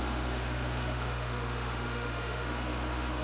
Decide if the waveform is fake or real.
fake